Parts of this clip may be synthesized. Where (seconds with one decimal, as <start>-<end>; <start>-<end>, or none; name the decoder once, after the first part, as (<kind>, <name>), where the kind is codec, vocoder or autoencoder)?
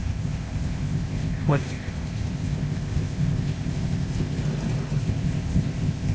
0.0-4.4 (codec, ZipCodec); 5.0-6.1